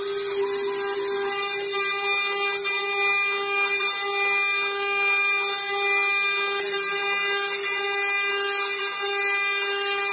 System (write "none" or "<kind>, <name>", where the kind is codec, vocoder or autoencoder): none